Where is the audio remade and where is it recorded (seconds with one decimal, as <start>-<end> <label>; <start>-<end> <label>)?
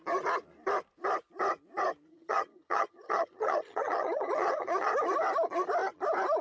0.0-2.1 recorded; 2.1-4.9 remade; 4.9-6.4 recorded